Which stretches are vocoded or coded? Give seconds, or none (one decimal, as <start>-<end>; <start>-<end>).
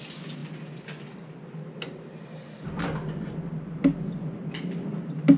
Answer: none